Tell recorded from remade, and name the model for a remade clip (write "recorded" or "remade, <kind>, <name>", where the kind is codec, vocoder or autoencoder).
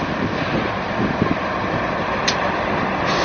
recorded